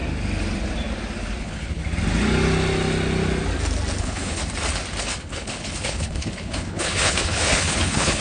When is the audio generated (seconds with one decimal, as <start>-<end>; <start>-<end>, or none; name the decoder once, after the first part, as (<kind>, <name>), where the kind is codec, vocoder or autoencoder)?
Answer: 1.4-1.8 (codec, HILCodec); 4.0-4.4; 5.0-8.2